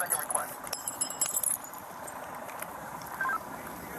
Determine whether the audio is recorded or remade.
remade